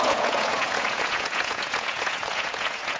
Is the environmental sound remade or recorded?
remade